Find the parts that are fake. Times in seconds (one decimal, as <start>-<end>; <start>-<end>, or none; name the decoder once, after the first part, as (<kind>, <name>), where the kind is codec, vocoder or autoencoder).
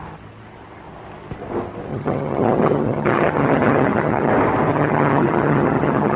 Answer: 1.9-4.3 (vocoder, HiFi-GAN); 4.7-6.2